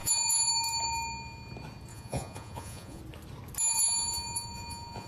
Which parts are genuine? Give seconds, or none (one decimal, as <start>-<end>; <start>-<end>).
0.5-1.9; 3.0-3.7